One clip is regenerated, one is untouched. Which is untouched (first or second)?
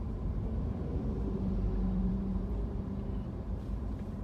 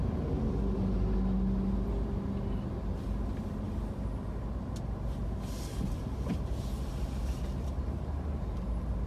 second